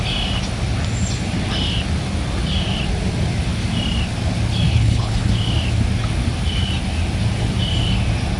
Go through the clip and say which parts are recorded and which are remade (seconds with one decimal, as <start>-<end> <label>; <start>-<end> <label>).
0.0-4.7 recorded; 4.7-5.3 remade; 5.3-8.4 recorded